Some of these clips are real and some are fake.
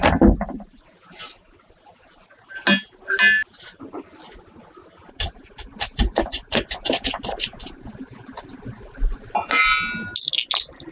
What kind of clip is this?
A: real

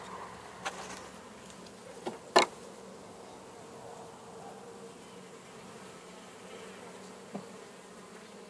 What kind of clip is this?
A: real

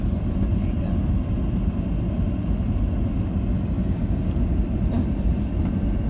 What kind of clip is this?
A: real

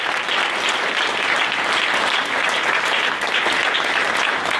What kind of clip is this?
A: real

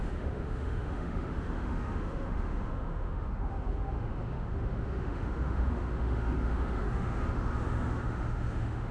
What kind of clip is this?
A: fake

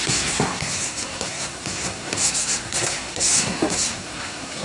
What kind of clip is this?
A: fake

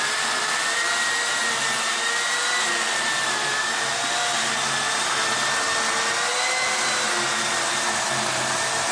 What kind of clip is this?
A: real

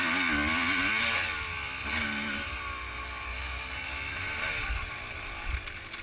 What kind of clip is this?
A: real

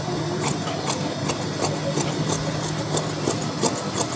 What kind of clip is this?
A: real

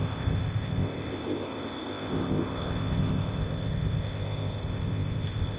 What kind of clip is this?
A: fake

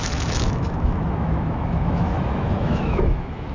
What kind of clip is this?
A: fake